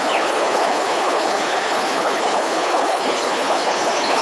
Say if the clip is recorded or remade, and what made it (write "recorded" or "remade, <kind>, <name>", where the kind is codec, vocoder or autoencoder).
remade, codec, HILCodec